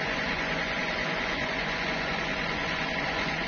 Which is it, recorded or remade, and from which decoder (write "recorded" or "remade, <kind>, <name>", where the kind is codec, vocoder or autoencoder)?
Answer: remade, vocoder, Vocos